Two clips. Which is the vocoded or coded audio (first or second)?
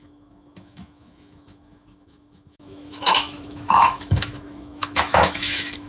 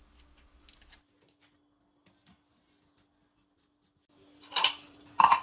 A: first